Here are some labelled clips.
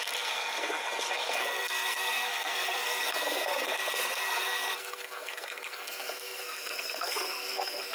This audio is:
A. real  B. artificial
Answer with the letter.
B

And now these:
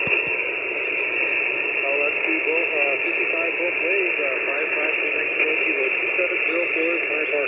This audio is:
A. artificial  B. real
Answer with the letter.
B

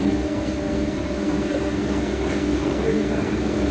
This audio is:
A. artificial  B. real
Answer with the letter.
A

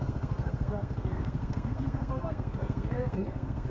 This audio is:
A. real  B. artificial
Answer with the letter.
B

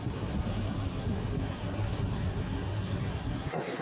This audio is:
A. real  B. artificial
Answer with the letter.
B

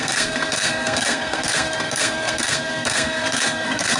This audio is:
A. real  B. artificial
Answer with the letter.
B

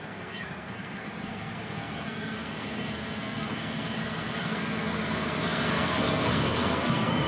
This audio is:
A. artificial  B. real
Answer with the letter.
A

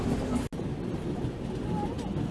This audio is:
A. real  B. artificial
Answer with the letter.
A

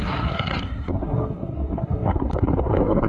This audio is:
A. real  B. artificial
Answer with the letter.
B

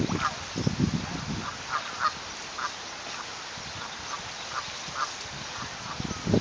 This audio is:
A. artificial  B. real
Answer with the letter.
B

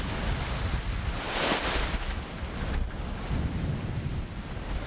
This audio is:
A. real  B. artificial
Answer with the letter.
A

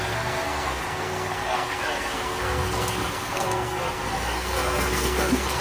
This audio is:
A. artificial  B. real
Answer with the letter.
A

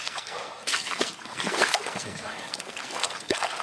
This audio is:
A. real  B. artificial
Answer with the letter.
B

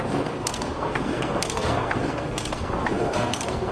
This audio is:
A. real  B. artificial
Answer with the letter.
B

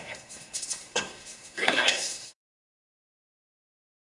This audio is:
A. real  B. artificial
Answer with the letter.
B